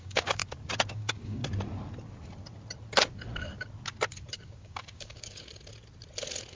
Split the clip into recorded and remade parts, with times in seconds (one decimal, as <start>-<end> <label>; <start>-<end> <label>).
0.0-0.4 remade; 0.4-0.9 recorded; 0.9-1.4 remade; 1.4-4.3 recorded; 4.3-5.5 remade; 5.5-6.5 recorded